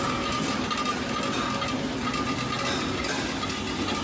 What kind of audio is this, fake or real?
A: real